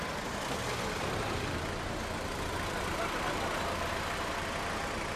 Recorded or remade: recorded